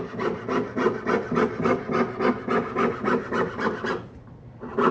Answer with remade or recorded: recorded